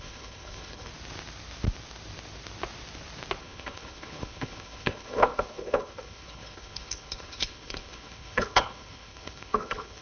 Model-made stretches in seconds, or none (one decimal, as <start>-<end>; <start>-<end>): 0.0-0.9; 3.4-10.0

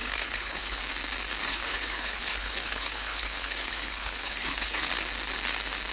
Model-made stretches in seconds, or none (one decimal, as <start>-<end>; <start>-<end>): 0.0-0.8; 1.4-4.9

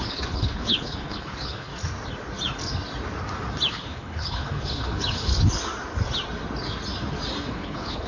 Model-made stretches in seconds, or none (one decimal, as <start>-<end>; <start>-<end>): 0.0-1.7; 3.7-5.3; 7.5-8.1

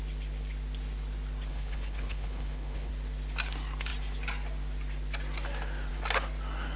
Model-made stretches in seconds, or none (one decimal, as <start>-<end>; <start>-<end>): 1.5-2.9

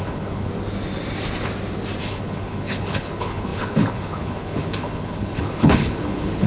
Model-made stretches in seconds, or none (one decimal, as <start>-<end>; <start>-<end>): 0.0-0.5; 2.0-6.5

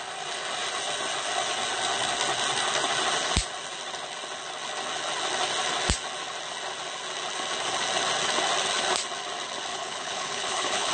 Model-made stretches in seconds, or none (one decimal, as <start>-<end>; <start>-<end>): 9.7-10.9

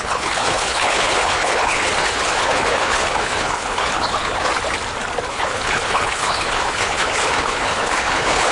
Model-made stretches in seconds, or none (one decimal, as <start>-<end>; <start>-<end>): 0.0-4.5; 5.3-8.5